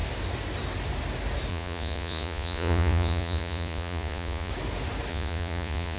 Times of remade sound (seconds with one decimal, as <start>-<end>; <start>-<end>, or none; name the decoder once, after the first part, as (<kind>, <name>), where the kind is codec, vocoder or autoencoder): 1.5-4.5 (vocoder, Vocos); 5.1-6.0